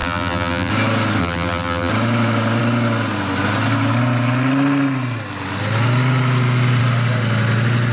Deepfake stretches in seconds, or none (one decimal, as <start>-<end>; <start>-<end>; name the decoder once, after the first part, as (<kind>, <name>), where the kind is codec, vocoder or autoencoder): 0.0-0.7 (vocoder, BigVGAN v2); 1.2-1.9

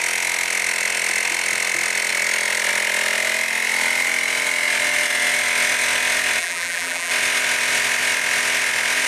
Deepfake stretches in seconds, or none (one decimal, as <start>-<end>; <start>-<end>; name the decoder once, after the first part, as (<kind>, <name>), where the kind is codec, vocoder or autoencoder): 6.4-7.1 (vocoder, BigVGAN v2)

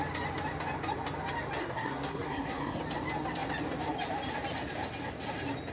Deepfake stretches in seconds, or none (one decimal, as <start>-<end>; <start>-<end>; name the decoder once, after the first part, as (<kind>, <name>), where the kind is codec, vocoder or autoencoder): 1.6-2.8 (codec, SNAC)